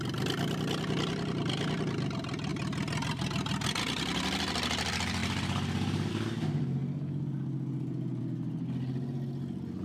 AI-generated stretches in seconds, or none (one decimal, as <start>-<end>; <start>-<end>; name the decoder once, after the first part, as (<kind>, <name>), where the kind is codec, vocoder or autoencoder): none